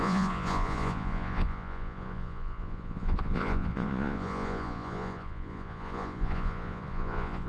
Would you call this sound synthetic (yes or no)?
yes